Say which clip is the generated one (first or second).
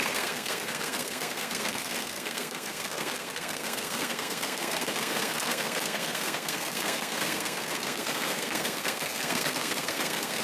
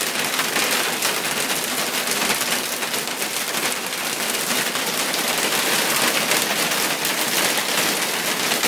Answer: first